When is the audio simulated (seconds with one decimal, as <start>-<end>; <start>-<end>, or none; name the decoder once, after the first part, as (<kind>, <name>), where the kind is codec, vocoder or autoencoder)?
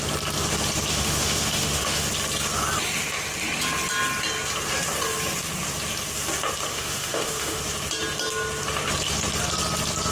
0.9-2.1 (autoencoder, DAC-VAE); 6.7-7.6